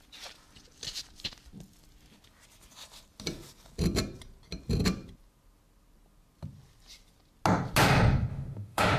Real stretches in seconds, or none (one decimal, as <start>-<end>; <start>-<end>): 0.0-8.3